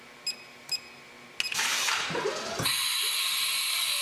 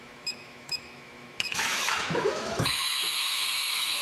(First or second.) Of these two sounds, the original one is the first